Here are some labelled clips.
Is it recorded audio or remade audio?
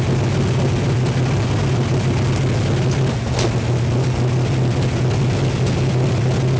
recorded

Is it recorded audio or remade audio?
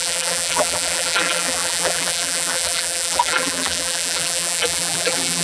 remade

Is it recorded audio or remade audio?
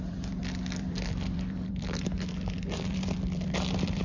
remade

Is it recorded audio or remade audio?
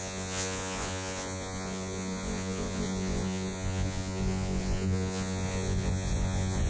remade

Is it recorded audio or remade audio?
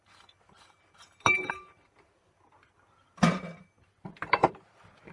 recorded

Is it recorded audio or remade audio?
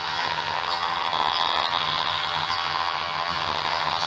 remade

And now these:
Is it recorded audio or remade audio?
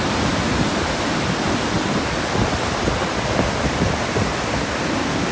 recorded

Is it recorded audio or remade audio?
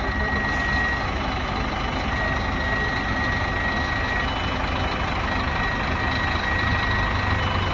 recorded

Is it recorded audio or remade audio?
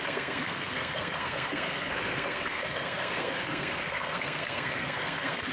remade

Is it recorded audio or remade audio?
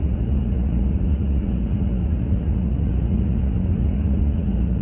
remade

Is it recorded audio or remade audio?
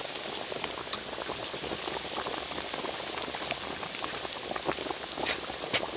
recorded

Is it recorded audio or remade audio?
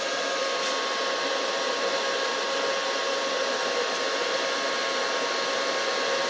recorded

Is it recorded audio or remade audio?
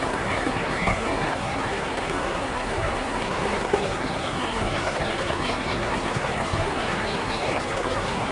remade